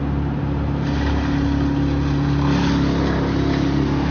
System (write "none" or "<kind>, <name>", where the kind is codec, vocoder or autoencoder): none